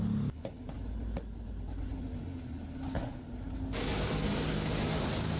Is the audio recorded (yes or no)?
yes